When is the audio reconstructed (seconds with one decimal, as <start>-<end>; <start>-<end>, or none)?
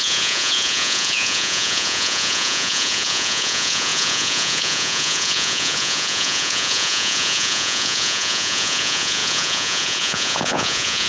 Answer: 0.0-11.1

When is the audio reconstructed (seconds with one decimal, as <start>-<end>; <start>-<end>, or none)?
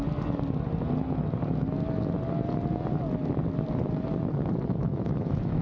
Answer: 4.8-5.6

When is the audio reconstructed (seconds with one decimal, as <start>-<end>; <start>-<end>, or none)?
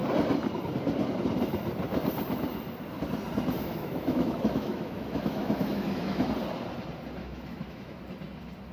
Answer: 3.6-6.3; 7.2-8.0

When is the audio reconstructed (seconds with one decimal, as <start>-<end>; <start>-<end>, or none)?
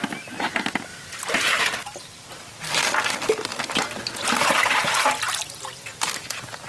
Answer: 0.9-2.8; 3.5-5.1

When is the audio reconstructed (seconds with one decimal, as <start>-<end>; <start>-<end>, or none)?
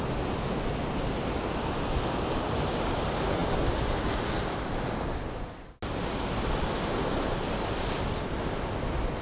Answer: none